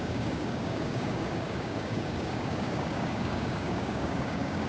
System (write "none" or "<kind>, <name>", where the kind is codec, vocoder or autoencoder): codec, DAC